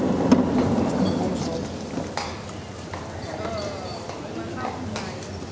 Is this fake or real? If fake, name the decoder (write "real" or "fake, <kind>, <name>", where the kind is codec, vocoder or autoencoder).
real